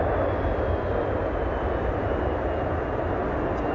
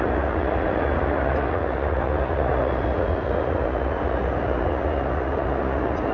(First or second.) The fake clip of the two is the second